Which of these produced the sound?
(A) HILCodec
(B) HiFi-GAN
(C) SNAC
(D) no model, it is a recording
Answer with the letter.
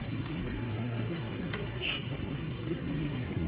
C